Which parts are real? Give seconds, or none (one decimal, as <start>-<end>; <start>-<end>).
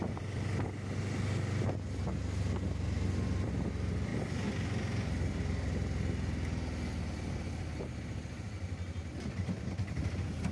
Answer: 0.0-10.5